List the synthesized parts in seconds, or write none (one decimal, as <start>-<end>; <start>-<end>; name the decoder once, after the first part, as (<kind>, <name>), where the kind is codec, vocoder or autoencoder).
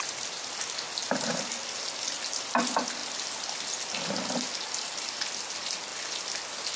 none